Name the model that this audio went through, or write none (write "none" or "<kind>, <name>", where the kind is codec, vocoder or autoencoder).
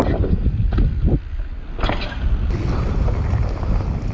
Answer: none